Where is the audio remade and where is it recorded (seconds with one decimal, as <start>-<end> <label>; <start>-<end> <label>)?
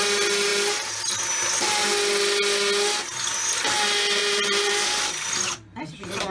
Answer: 0.0-4.2 recorded; 4.2-6.3 remade